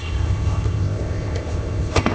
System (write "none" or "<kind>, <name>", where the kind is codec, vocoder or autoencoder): codec, ZipCodec